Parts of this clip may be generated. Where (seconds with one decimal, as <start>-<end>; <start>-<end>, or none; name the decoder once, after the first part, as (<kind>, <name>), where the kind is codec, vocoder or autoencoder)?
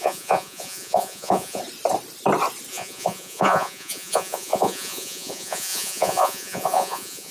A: 0.0-1.6 (vocoder, Vocos); 2.7-7.3